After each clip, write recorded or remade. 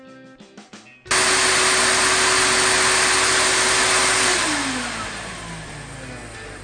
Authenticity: recorded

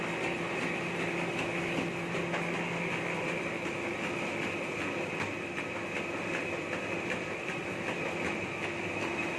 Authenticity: recorded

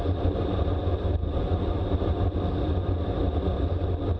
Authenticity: recorded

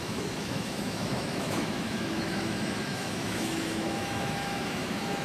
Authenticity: remade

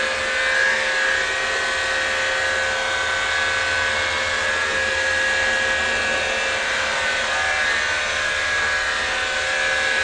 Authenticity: recorded